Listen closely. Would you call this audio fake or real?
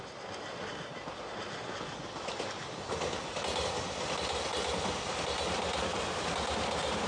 real